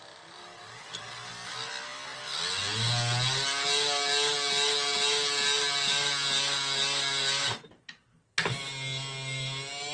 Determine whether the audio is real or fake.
real